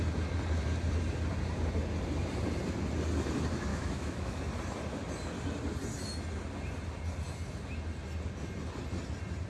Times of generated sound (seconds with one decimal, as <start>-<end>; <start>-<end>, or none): 3.7-4.4